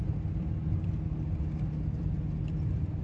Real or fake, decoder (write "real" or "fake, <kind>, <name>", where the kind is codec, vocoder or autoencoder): real